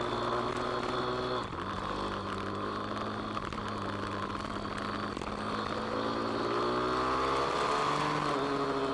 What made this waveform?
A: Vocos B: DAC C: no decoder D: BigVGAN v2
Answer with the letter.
C